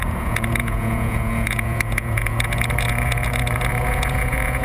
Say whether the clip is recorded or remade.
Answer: remade